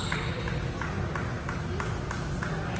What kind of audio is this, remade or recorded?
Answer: recorded